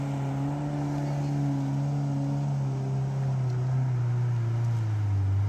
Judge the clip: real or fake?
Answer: real